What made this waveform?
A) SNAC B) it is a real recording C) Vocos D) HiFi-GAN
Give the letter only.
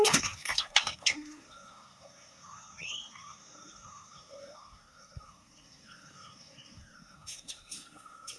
A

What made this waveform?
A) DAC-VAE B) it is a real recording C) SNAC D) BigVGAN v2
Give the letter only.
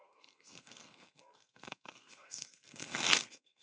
C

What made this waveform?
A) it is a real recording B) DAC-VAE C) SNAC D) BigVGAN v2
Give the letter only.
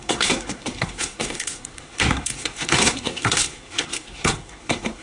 C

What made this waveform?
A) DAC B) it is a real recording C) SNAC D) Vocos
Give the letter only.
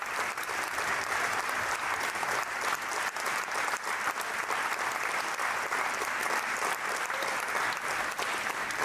B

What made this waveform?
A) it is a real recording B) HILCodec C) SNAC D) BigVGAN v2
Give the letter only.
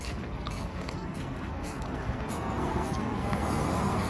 C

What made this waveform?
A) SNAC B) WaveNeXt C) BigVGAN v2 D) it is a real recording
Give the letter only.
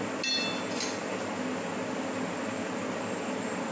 D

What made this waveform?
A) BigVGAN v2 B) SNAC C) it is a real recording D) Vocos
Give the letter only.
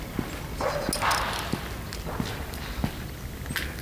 C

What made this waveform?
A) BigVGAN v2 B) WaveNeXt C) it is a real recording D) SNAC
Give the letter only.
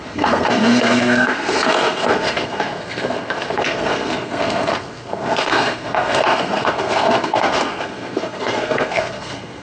D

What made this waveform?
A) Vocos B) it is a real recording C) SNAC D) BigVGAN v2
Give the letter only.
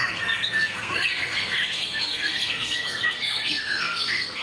C